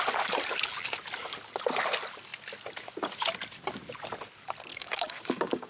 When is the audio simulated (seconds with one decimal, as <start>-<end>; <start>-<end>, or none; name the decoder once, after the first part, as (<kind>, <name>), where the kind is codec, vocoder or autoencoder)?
4.7-5.7 (codec, DAC)